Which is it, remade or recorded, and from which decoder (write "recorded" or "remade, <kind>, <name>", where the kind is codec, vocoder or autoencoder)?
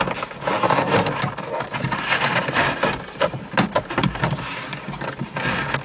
recorded